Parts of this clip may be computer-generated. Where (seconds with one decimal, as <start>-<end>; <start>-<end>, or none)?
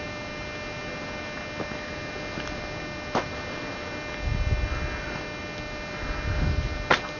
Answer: none